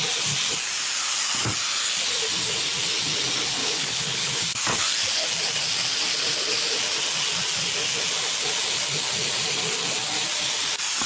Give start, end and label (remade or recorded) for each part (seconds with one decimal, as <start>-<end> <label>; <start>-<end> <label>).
0.0-3.6 recorded; 3.6-4.4 remade; 4.4-11.1 recorded